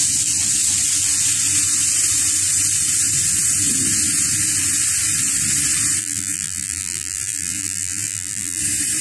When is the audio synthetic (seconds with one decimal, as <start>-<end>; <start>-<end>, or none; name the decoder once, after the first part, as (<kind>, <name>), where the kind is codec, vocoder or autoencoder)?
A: 6.0-8.6 (vocoder, BigVGAN v2)